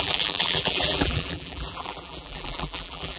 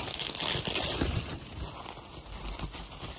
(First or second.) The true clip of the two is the second